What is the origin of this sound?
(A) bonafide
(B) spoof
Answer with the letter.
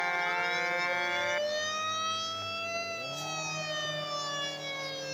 A